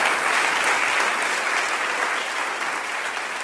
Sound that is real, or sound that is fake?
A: real